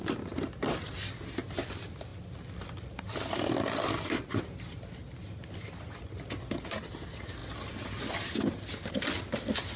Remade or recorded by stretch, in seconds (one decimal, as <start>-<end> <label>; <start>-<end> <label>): 0.0-9.8 recorded

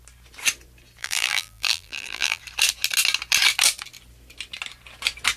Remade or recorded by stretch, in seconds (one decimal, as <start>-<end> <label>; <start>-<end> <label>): 0.0-1.0 recorded; 1.0-2.4 remade; 2.4-5.4 recorded

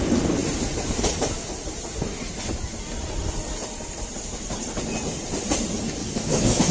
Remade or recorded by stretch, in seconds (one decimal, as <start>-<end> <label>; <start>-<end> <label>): 0.0-6.0 recorded; 6.0-6.7 remade

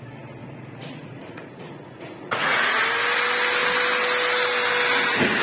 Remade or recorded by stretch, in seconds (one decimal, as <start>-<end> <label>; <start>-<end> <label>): 0.0-0.4 recorded; 0.4-2.7 remade; 2.7-5.4 recorded

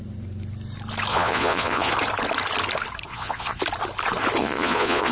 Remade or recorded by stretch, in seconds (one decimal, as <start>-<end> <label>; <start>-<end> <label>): 0.0-1.1 recorded; 1.1-1.9 remade; 1.9-3.1 recorded; 3.1-3.6 remade; 3.6-4.4 recorded; 4.4-5.1 remade

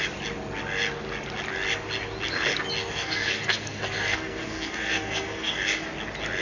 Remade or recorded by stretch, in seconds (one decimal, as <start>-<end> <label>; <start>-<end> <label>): 0.0-2.8 recorded; 2.8-5.9 remade; 5.9-6.4 recorded